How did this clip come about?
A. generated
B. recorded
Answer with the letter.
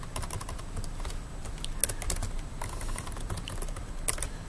B